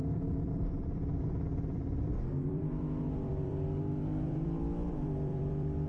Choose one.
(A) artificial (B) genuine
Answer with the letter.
A